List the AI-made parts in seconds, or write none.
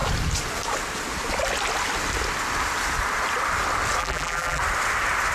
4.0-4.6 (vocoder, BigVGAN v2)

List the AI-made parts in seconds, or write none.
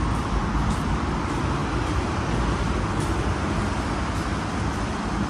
0.0-1.6 (vocoder, BigVGAN v2); 4.8-5.3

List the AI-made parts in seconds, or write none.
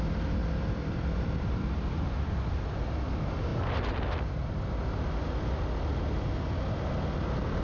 0.4-2.9 (vocoder, BigVGAN v2); 3.5-4.3